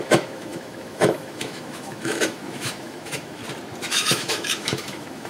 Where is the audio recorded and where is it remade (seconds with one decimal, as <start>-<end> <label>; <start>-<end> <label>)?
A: 0.0-3.4 remade; 3.4-3.9 recorded; 3.9-5.3 remade

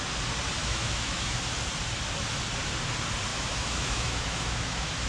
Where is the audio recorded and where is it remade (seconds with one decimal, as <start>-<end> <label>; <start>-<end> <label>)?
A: 0.0-0.6 recorded; 0.6-1.4 remade; 1.4-3.3 recorded; 3.3-5.1 remade